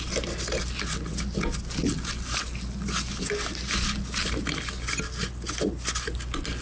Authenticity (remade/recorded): recorded